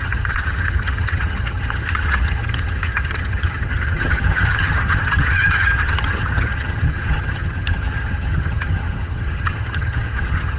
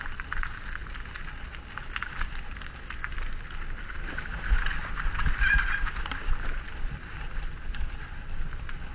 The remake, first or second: first